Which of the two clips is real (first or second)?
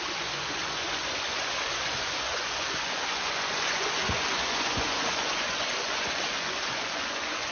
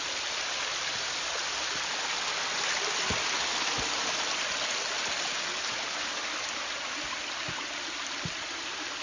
second